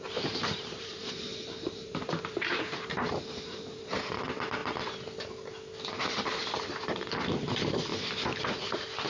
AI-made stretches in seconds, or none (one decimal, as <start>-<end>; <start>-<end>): 0.0-4.6; 5.9-7.9; 8.4-9.1